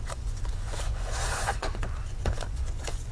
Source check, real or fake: fake